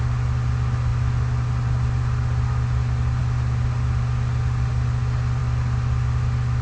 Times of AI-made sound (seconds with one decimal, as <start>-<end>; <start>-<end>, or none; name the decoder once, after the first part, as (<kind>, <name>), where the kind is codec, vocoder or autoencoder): none